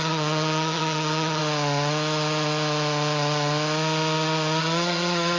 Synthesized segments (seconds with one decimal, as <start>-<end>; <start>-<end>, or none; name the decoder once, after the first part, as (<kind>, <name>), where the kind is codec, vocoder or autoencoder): 0.0-1.4 (vocoder, HiFi-GAN); 4.6-5.4